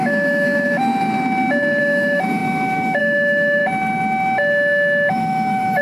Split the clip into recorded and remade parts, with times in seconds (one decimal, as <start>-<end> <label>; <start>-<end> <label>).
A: 0.0-0.9 remade; 0.9-1.8 recorded; 1.8-3.6 remade; 3.6-5.1 recorded; 5.1-5.8 remade